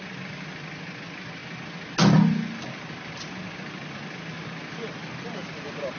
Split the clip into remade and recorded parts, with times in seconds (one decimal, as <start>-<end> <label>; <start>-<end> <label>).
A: 0.0-6.0 recorded